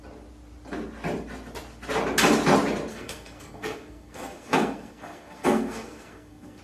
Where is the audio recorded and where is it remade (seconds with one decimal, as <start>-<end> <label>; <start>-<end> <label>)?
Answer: 0.0-2.9 recorded; 2.9-6.6 remade